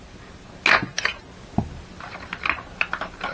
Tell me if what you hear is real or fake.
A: real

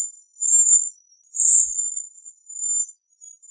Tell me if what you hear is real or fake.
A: real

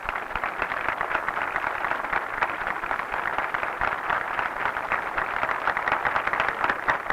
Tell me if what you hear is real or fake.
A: real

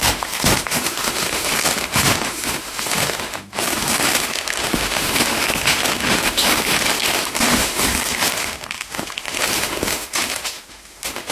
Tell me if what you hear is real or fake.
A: fake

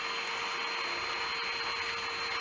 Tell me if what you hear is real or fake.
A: real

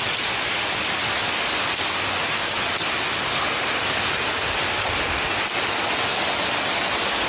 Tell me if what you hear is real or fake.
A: real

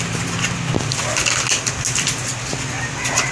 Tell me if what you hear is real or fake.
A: real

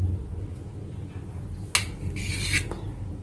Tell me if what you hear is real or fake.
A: real